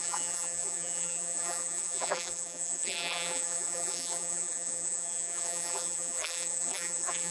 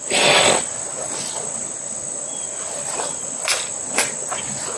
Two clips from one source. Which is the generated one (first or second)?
first